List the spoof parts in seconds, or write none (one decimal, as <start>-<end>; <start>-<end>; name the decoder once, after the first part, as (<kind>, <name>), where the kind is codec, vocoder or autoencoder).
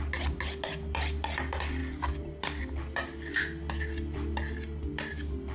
none